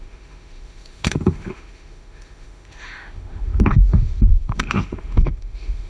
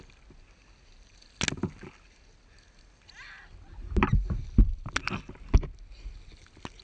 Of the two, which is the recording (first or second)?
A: second